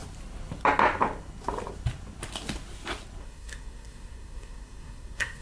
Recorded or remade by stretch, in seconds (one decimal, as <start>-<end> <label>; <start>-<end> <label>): 0.0-3.2 recorded; 3.2-5.4 remade